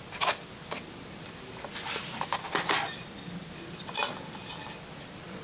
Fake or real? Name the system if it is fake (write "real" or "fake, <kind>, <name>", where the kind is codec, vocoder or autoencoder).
real